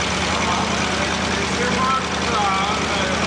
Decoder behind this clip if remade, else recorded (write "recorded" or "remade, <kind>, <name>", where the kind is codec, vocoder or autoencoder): recorded